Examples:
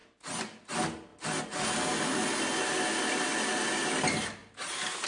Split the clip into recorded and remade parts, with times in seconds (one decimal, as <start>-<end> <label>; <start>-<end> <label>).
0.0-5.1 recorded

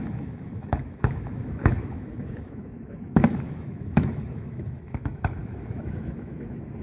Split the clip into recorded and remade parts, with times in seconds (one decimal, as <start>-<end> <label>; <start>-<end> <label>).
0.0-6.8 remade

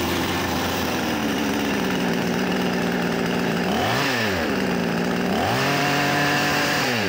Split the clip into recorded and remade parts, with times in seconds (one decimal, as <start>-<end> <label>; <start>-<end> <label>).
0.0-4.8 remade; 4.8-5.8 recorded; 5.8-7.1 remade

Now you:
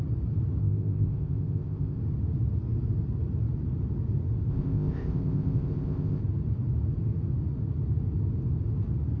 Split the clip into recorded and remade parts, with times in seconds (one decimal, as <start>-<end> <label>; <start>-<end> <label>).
0.0-0.6 recorded; 0.6-2.0 remade; 2.0-4.5 recorded; 4.5-6.2 remade; 6.2-9.2 recorded

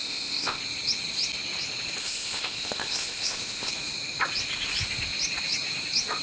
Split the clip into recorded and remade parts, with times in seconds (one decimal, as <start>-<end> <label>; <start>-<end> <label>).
0.0-0.6 remade; 0.6-2.0 recorded; 2.0-3.7 remade; 3.7-6.2 recorded